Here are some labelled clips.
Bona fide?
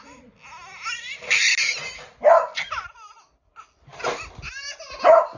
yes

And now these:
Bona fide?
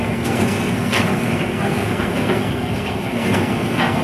no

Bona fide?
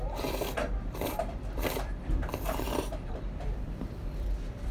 no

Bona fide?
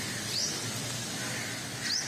yes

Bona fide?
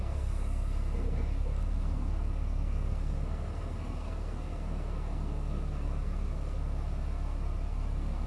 no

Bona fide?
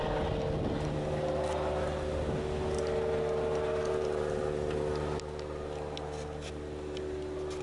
yes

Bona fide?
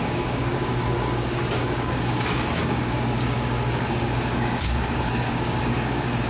no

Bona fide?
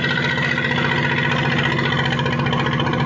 yes